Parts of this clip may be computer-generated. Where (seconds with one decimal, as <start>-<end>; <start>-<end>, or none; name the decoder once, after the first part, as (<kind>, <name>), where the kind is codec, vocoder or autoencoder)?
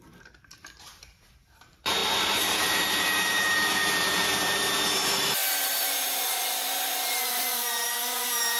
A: 0.0-8.6 (vocoder, BigVGAN v2)